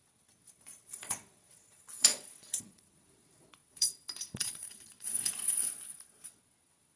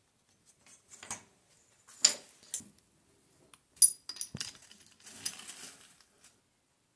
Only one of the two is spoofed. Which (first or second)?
first